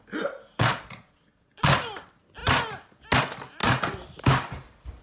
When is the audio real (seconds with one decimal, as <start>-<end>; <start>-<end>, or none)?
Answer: 0.0-0.6; 1.7-5.0